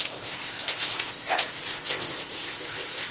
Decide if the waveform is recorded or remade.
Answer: remade